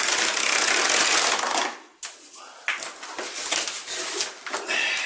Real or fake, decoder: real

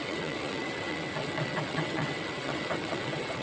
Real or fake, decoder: fake, vocoder, WaveNeXt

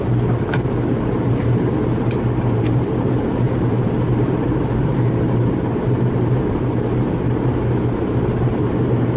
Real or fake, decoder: fake, vocoder, BigVGAN v2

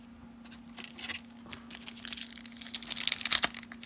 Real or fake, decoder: real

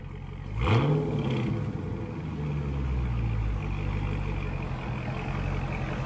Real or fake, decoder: real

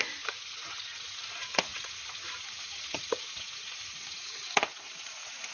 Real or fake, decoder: fake, vocoder, Vocos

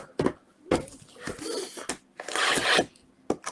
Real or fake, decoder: real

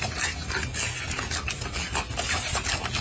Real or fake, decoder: real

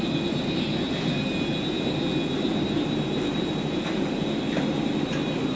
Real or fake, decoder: real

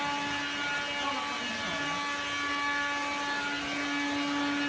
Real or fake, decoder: real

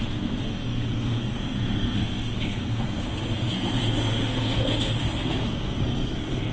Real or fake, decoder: fake, codec, SNAC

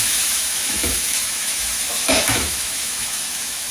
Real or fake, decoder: fake, autoencoder, DAC-VAE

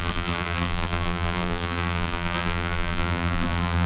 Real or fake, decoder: fake, vocoder, BigVGAN v2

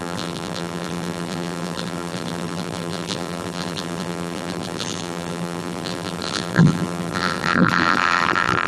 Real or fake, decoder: fake, vocoder, BigVGAN v2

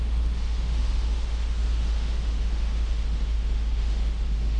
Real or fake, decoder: fake, autoencoder, DAC-VAE